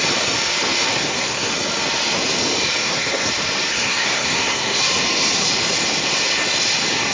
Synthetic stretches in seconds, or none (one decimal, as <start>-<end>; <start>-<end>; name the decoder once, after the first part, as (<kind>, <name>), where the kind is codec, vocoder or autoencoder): 0.9-1.5 (codec, SNAC); 2.8-3.3; 3.7-4.8